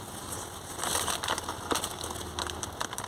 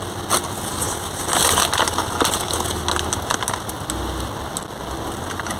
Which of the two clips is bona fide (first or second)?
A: second